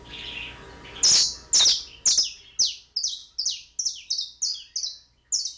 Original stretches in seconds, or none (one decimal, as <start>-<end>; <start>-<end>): 0.0-5.6